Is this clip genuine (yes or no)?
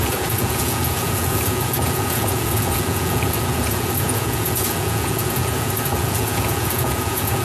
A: no